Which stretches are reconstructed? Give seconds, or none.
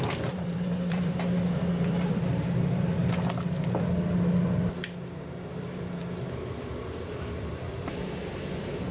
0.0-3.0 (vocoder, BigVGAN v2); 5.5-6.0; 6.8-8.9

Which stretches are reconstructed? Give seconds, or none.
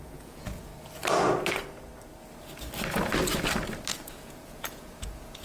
0.0-0.7 (vocoder, Vocos); 3.9-5.4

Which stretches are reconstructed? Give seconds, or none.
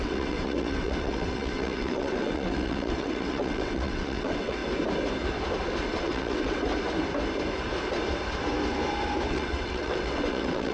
0.0-4.6 (vocoder, WaveNeXt); 6.0-6.7; 9.3-10.7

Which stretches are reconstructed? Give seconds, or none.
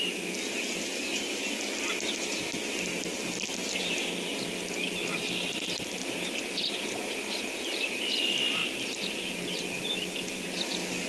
6.0-8.0 (vocoder, BigVGAN v2)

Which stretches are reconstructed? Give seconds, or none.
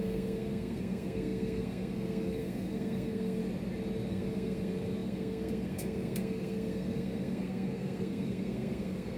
0.0-3.4 (codec, SNAC); 4.1-9.2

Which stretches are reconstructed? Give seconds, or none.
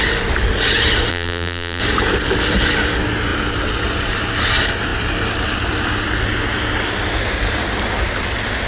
1.1-1.8 (vocoder, BigVGAN v2)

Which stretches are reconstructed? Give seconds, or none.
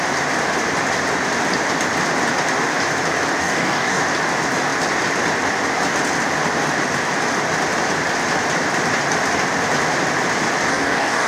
3.4-4.0 (codec, DAC); 10.7-11.3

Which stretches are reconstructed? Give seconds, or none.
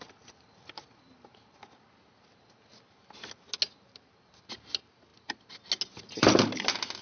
none